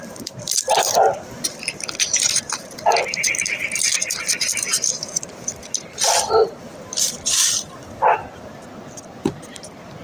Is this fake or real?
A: fake